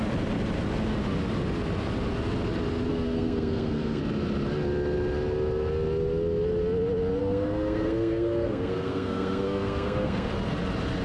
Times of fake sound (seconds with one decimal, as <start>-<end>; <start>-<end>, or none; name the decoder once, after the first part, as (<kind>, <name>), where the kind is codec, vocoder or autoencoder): 2.9-4.0 (codec, SNAC); 7.2-10.3

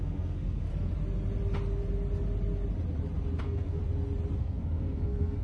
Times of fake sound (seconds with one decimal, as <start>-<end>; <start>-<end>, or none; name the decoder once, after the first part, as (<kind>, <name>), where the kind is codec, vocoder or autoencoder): 0.0-0.7 (codec, SNAC); 3.4-3.8; 4.4-5.4

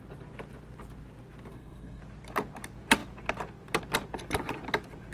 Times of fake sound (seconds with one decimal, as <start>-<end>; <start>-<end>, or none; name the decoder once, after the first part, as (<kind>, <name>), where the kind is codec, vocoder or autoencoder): 1.5-2.0 (codec, SNAC)

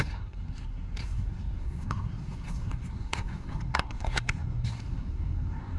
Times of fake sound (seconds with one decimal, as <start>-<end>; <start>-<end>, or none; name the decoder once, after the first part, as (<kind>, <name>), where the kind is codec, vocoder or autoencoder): 0.0-5.8 (codec, SNAC)

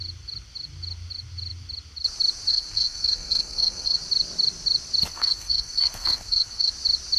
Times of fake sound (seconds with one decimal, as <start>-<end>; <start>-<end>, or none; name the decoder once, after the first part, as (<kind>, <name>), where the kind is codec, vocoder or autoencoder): 2.5-4.0 (codec, SNAC); 5.1-6.7

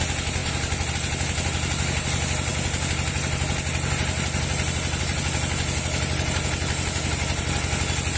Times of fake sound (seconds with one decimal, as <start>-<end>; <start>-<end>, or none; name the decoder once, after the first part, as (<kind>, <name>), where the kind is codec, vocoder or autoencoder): none

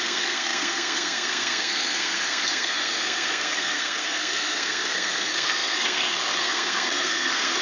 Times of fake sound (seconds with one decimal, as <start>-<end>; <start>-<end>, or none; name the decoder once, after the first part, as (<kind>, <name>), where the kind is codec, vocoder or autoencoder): 0.0-7.6 (codec, SNAC)